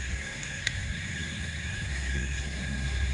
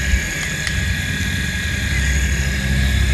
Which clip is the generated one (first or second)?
first